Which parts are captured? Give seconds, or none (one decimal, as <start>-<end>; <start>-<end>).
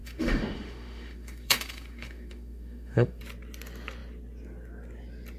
3.2-5.4